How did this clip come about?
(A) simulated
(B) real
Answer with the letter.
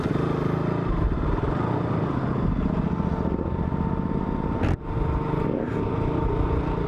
B